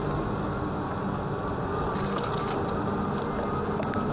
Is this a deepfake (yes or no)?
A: no